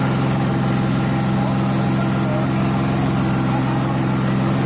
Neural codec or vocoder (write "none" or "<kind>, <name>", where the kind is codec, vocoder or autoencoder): none